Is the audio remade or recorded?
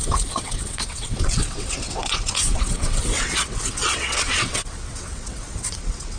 remade